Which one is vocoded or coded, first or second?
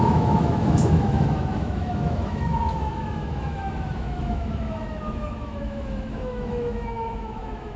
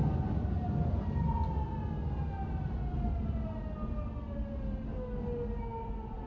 first